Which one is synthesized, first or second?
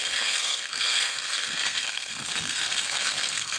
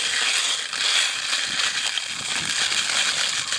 first